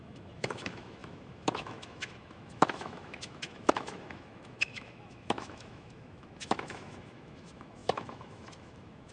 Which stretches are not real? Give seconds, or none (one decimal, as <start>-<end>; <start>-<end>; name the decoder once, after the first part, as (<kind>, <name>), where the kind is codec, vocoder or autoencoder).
0.0-9.1 (autoencoder, DAC-VAE)